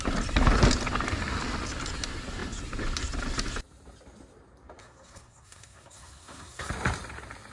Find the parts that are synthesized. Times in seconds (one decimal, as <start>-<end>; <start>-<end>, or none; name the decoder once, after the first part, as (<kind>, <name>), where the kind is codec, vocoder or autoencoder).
4.8-6.7 (codec, SNAC)

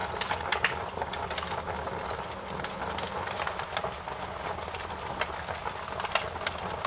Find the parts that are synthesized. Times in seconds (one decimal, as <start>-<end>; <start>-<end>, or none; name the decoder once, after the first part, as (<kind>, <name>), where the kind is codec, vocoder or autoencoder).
none

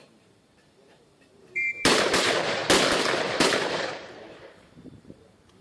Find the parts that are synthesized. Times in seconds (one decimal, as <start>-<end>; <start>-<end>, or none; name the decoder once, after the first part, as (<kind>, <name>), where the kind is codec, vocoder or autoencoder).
0.0-2.6 (vocoder, BigVGAN v2); 3.4-5.6

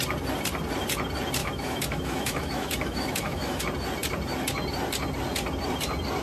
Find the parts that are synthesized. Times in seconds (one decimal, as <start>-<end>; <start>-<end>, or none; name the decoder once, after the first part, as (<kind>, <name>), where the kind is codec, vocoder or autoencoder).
1.4-3.6 (autoencoder, DAC-VAE)

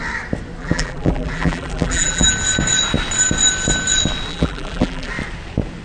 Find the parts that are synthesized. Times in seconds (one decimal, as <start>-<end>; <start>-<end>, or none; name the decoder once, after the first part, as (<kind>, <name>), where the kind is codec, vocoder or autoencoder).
0.6-2.3 (vocoder, BigVGAN v2); 4.3-5.1

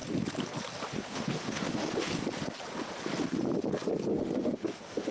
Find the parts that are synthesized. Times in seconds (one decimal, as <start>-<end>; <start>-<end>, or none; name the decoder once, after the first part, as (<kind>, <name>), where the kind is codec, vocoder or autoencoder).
0.9-2.1 (autoencoder, DAC-VAE); 4.1-5.1